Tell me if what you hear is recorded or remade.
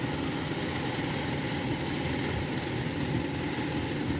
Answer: recorded